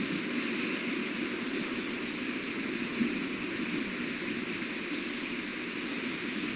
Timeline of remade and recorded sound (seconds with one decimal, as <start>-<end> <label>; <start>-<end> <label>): 0.0-6.6 recorded